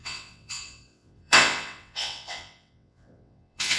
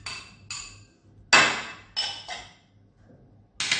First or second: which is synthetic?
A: first